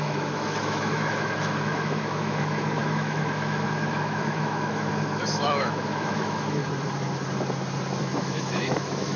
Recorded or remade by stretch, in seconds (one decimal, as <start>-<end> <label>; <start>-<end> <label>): 0.0-6.6 remade; 6.6-8.0 recorded; 8.0-9.2 remade

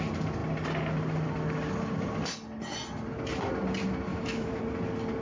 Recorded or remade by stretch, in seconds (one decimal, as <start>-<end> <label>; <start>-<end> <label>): 0.0-4.1 recorded; 4.1-4.6 remade; 4.6-5.2 recorded